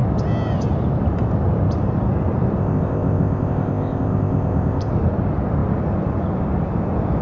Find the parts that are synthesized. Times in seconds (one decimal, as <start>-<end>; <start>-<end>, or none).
2.6-4.9